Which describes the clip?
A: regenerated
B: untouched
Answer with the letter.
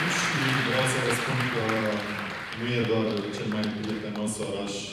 A